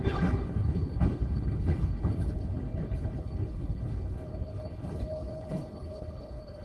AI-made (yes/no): yes